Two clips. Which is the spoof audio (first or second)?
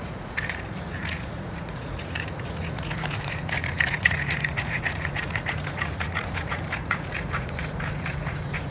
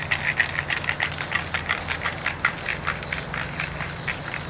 first